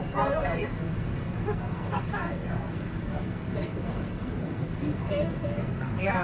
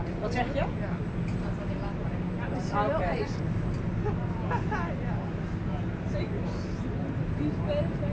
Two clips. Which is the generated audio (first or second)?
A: first